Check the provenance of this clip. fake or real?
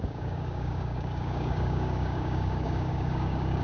fake